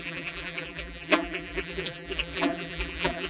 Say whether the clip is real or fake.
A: fake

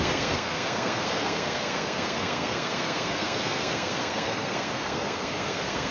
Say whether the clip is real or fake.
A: fake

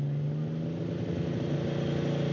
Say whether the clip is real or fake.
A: real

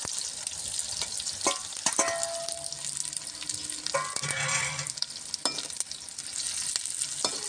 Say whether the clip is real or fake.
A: real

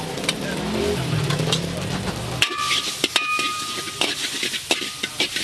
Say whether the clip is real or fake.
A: real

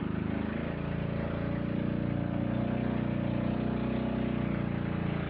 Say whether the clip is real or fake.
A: real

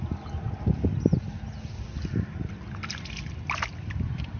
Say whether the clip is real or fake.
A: real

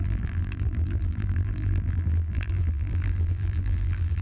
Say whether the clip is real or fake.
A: fake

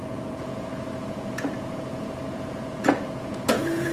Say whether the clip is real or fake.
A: fake